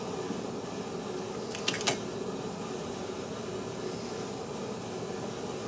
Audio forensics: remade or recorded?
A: recorded